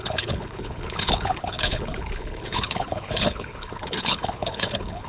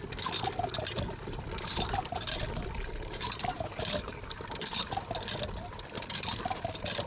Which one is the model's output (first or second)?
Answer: first